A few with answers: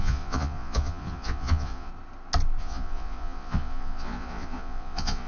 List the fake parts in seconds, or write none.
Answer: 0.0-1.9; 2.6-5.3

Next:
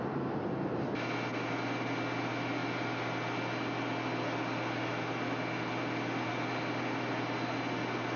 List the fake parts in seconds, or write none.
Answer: none

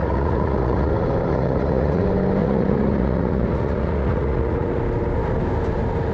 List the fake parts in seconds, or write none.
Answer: 0.0-0.9; 1.3-2.0; 2.4-4.8

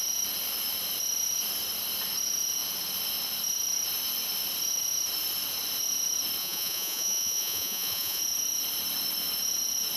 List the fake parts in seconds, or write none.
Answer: 6.4-8.2

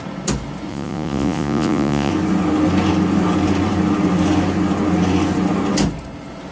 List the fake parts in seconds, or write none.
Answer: 0.7-2.1